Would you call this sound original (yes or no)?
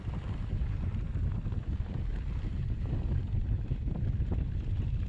yes